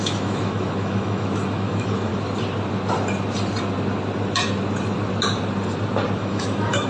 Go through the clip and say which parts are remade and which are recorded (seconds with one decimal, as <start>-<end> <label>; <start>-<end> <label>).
0.0-2.1 remade; 2.1-6.2 recorded; 6.2-6.9 remade